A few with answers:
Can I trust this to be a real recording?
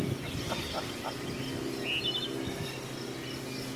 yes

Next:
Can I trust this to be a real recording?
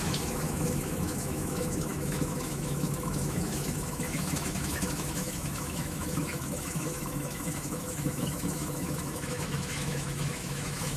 no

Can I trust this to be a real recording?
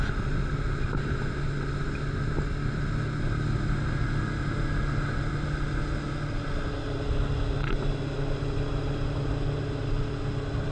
yes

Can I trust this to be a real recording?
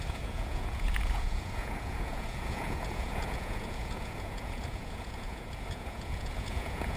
no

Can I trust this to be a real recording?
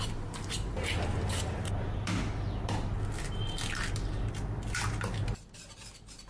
yes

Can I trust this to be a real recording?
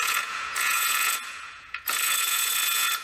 no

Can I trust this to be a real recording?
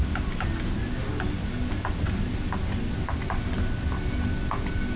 yes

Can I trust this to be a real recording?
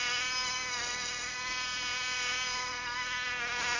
yes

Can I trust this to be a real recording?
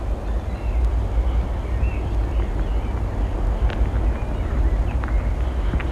yes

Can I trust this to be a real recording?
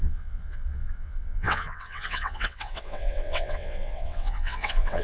no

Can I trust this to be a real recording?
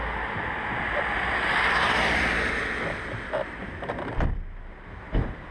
yes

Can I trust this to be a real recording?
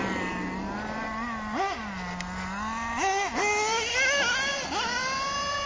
yes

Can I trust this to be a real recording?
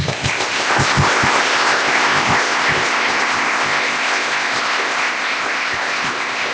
no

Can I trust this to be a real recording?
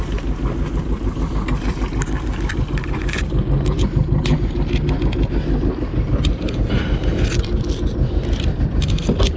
yes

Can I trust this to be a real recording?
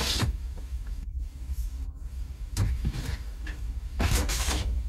no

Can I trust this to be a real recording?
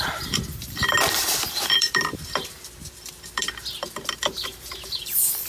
no